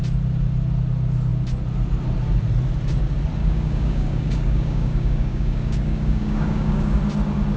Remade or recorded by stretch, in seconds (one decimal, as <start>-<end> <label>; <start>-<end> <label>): 0.0-3.4 recorded; 3.4-7.0 remade; 7.0-7.6 recorded